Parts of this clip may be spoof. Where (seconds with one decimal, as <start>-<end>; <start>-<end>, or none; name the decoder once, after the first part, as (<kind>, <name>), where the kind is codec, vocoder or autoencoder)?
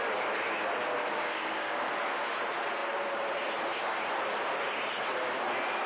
1.0-1.9 (codec, DAC)